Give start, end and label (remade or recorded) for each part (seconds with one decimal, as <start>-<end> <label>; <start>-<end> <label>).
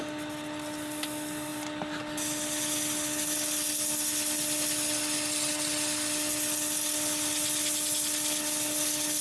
0.0-9.2 recorded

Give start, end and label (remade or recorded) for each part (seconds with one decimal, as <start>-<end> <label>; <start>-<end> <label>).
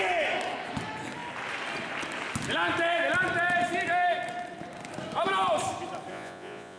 0.0-6.1 recorded; 6.1-6.8 remade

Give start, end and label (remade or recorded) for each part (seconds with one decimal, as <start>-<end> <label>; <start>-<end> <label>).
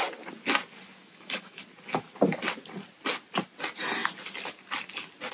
0.0-1.0 recorded; 1.0-1.6 remade; 1.6-5.3 recorded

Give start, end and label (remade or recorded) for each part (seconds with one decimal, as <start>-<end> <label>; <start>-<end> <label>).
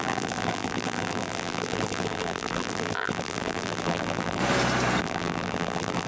0.0-4.4 remade; 4.4-5.0 recorded; 5.0-6.1 remade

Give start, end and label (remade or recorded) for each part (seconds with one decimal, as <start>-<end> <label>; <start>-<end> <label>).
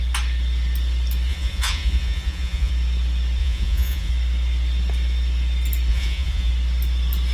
0.0-1.3 recorded; 1.3-2.7 remade; 2.7-3.4 recorded; 3.4-4.1 remade; 4.1-5.9 recorded; 5.9-6.5 remade; 6.5-7.3 recorded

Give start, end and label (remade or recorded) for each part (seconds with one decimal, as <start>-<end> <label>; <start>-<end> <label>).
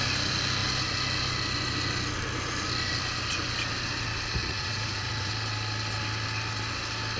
0.0-4.4 recorded; 4.4-5.3 remade; 5.3-7.2 recorded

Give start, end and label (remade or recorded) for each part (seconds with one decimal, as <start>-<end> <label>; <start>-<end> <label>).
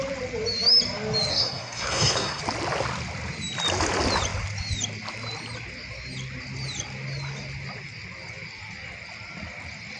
0.0-1.3 recorded; 1.3-2.4 remade; 2.4-10.0 recorded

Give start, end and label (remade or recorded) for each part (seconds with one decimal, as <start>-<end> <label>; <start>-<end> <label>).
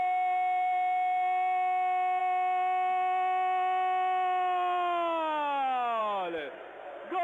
0.0-7.2 recorded